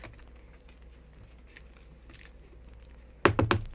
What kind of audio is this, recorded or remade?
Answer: recorded